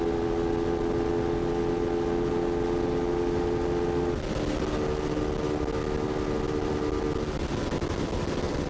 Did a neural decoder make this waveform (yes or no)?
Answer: no